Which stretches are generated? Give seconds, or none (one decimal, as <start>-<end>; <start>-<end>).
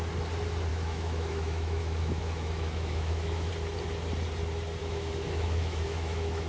0.7-3.5; 4.8-6.5